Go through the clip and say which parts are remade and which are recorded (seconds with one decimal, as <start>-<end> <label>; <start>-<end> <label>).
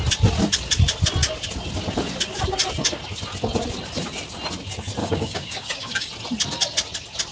0.0-5.0 recorded; 5.0-6.1 remade; 6.1-7.3 recorded